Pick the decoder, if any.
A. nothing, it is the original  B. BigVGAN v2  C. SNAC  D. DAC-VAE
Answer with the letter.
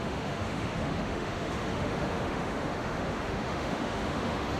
D